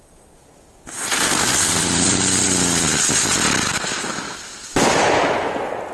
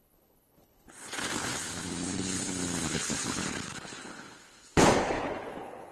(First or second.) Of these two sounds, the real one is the first